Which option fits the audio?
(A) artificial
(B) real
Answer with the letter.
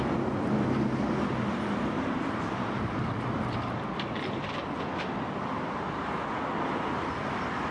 B